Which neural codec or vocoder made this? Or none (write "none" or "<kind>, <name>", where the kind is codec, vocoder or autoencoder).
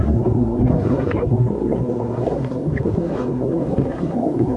codec, SNAC